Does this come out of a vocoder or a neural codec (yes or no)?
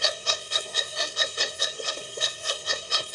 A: yes